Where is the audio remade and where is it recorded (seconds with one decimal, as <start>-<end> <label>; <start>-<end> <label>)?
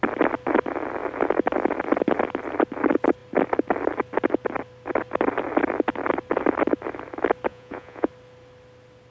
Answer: 0.0-7.5 recorded; 7.5-8.1 remade; 8.1-9.1 recorded